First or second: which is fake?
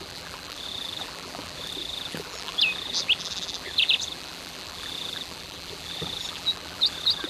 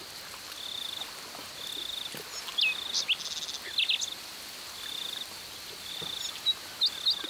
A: first